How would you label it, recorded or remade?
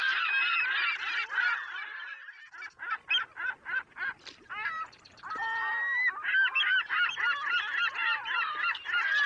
recorded